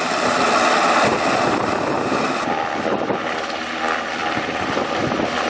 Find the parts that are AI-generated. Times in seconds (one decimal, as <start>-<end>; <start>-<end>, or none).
none